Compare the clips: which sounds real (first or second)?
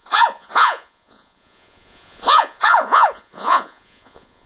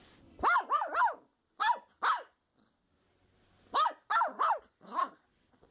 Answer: second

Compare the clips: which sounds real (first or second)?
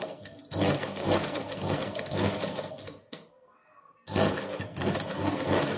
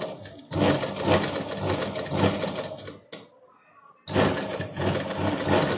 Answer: second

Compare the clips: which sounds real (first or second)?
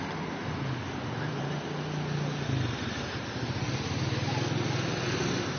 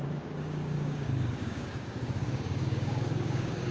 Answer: first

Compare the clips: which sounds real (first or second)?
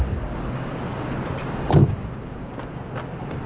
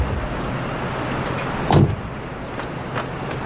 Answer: second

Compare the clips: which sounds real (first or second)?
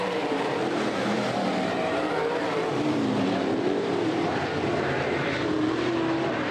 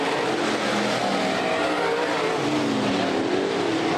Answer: second